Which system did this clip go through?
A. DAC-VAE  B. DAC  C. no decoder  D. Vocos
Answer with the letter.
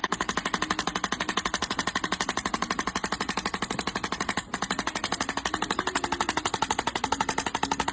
C